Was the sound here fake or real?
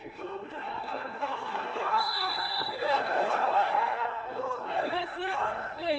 fake